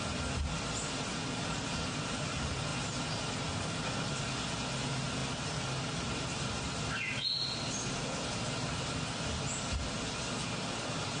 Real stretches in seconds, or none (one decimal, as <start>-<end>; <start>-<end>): 0.0-11.2